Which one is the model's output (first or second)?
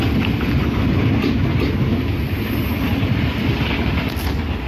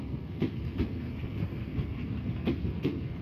second